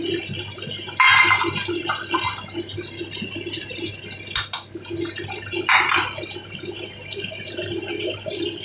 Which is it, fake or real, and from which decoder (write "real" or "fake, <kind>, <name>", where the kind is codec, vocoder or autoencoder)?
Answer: real